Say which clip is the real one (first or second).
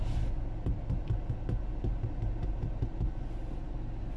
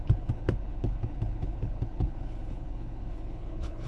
first